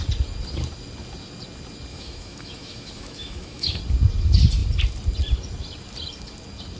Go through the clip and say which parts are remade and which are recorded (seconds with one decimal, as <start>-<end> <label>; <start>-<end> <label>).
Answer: 0.0-1.9 recorded; 1.9-3.8 remade; 3.8-6.8 recorded